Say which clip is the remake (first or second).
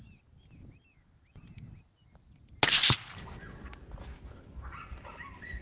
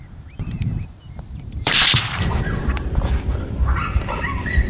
second